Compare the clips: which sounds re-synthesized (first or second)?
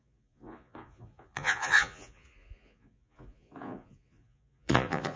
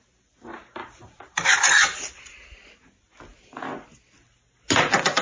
first